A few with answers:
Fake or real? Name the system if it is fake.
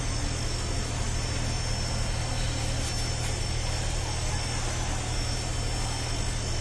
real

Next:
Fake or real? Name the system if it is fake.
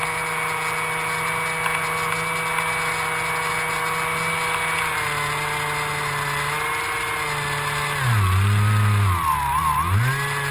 real